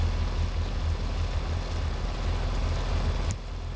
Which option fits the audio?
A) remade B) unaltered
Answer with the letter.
B